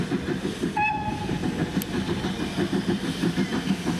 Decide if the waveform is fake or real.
real